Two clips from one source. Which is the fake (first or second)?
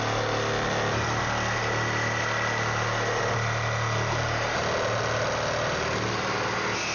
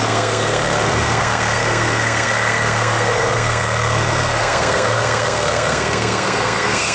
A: second